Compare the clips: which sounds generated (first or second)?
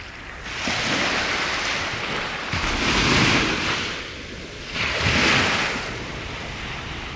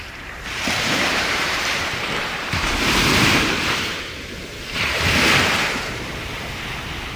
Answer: second